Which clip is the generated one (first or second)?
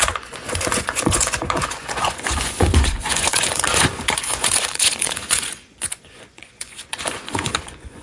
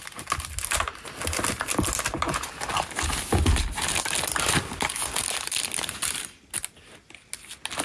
first